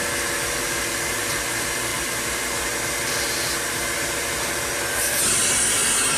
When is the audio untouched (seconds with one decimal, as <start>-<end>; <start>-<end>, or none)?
0.0-6.2